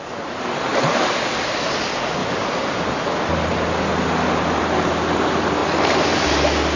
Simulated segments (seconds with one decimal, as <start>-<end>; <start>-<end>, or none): none